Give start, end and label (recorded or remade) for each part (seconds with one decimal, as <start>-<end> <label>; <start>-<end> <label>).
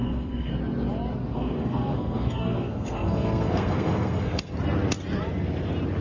0.0-0.5 remade; 0.5-1.3 recorded; 1.3-4.5 remade; 4.5-6.0 recorded